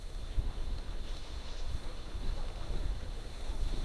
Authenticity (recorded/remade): remade